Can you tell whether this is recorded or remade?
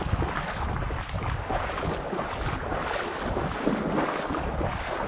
recorded